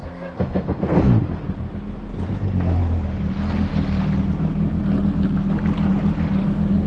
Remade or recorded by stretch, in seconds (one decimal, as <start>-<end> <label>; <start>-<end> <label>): 0.0-1.0 remade; 1.0-6.9 recorded

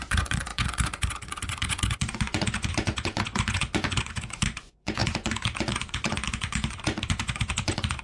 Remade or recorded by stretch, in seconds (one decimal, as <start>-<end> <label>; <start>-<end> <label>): 0.0-8.0 remade

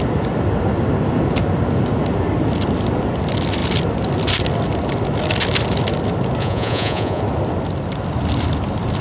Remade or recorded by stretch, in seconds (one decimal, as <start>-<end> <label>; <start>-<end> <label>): 0.0-6.4 recorded; 6.4-7.2 remade; 7.2-9.0 recorded

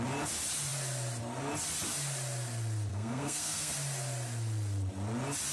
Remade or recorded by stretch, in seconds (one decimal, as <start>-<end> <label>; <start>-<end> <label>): 0.0-2.9 recorded; 2.9-3.7 remade; 3.7-5.5 recorded